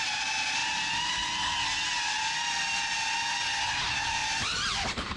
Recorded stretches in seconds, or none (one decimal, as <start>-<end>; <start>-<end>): 0.0-5.2